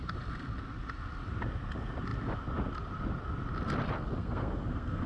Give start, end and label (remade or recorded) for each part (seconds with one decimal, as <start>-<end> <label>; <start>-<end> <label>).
0.0-4.2 recorded; 4.2-5.1 remade